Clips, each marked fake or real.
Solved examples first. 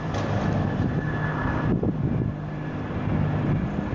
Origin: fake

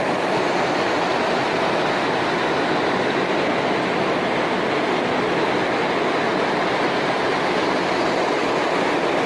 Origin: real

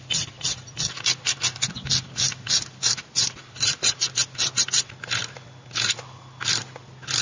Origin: real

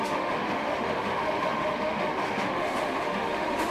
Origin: fake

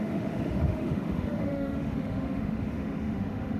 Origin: fake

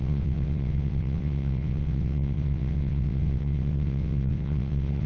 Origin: fake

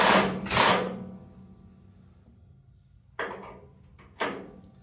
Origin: real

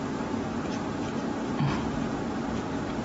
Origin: real